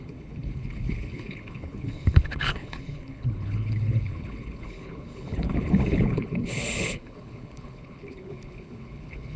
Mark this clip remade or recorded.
remade